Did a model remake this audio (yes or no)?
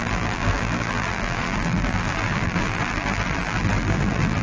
yes